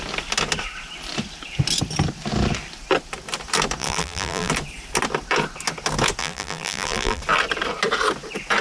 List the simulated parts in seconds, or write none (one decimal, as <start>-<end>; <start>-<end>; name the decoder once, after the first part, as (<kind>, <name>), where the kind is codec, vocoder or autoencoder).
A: 3.8-4.5 (vocoder, BigVGAN v2); 6.2-7.2